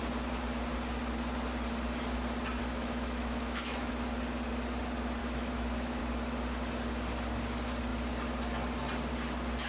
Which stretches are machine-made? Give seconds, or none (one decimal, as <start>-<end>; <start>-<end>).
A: 2.6-3.9; 5.2-6.0